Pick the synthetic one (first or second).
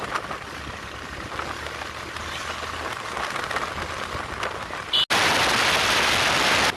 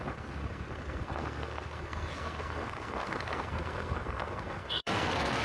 second